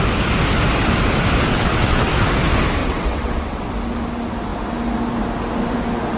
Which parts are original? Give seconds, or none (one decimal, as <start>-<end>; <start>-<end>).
0.0-1.5; 2.1-2.8; 3.7-6.2